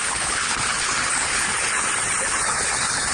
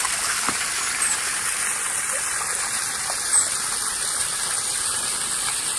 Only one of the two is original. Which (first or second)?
second